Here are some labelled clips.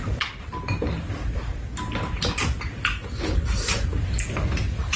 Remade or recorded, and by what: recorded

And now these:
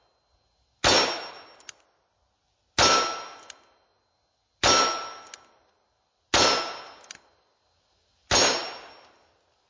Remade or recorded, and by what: recorded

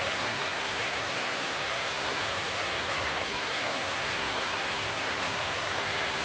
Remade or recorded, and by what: remade, codec, SNAC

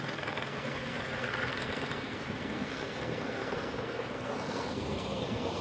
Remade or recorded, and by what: remade, codec, SNAC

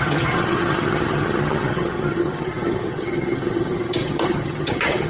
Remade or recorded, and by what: remade, vocoder, HiFi-GAN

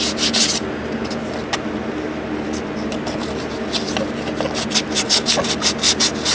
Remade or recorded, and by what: recorded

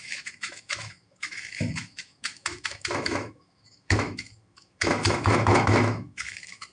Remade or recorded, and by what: remade, autoencoder, DAC-VAE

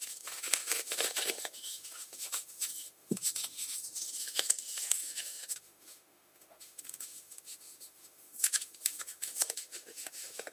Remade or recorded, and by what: remade, autoencoder, DAC-VAE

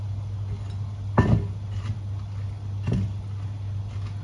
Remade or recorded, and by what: recorded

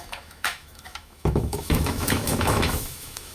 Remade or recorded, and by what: remade, autoencoder, DAC-VAE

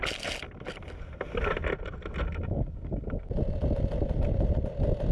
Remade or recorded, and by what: recorded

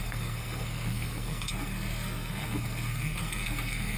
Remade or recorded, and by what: remade, codec, SNAC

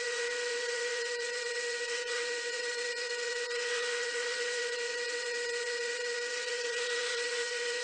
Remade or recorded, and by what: remade, vocoder, WaveNeXt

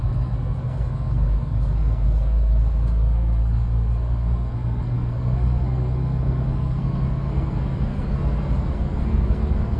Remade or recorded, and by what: remade, codec, SNAC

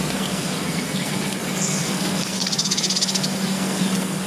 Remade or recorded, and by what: remade, codec, SNAC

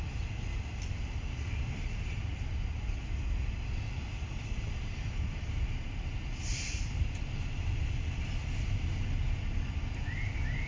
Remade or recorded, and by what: recorded